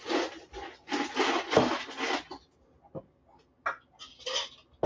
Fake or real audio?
real